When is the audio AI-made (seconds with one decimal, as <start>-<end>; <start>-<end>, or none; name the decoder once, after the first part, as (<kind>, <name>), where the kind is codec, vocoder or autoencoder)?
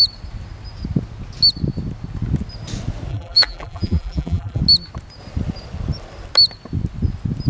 3.1-4.6 (vocoder, BigVGAN v2)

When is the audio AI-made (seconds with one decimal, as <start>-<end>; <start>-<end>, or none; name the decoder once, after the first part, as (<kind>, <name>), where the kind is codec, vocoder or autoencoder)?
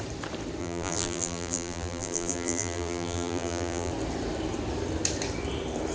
0.6-3.9 (vocoder, BigVGAN v2)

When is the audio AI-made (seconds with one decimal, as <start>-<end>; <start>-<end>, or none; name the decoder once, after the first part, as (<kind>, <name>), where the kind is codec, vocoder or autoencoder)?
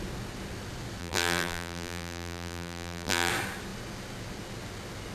1.0-3.3 (vocoder, BigVGAN v2)